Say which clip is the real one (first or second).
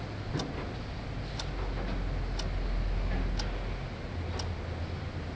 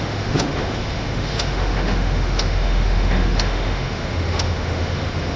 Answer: first